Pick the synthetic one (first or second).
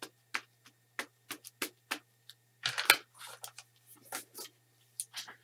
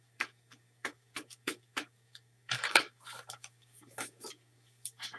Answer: second